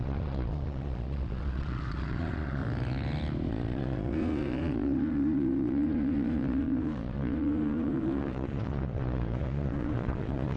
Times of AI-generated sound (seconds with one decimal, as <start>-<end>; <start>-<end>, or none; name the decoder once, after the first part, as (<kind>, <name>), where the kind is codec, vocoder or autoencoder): 0.0-2.6 (vocoder, Vocos); 3.5-10.6

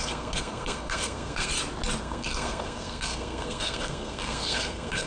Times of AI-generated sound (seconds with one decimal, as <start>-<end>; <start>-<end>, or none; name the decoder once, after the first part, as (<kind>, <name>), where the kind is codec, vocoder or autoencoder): 0.0-1.5 (codec, SNAC); 2.0-5.1

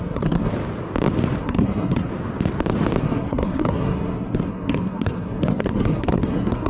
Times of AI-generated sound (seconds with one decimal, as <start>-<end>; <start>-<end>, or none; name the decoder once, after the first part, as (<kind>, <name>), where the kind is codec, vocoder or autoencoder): 0.0-0.5 (codec, SNAC); 1.4-2.1; 3.0-6.7

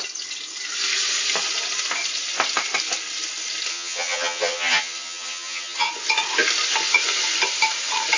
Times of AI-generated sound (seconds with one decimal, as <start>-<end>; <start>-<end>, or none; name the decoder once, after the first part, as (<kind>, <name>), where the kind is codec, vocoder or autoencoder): 3.7-5.9 (vocoder, HiFi-GAN)

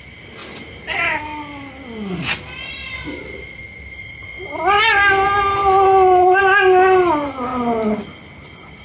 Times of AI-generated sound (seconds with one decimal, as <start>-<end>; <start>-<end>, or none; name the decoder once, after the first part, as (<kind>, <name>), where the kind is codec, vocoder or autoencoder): 0.4-3.6 (vocoder, BigVGAN v2); 4.2-4.8; 5.6-6.4